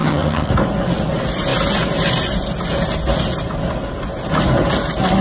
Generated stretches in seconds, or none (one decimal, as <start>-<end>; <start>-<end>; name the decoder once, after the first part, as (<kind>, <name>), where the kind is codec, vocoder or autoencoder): 0.0-0.5 (vocoder, HiFi-GAN)